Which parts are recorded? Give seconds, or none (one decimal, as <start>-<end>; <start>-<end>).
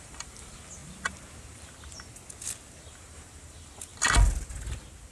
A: 0.8-2.8; 3.9-5.1